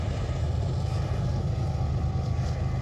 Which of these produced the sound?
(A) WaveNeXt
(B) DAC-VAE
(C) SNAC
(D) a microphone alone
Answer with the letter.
D